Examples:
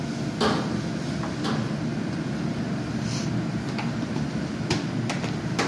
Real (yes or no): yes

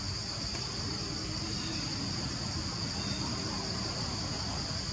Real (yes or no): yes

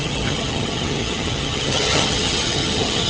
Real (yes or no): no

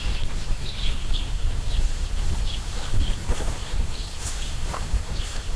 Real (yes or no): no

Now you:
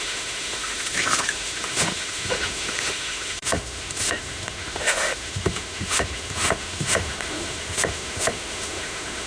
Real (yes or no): no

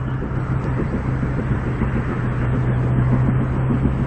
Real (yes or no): yes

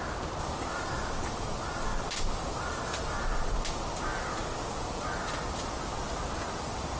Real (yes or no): yes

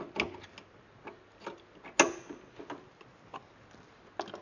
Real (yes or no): yes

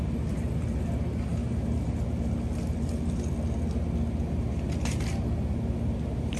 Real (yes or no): yes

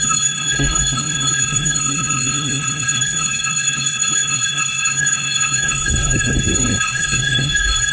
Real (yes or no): no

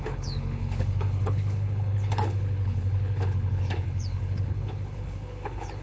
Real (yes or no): no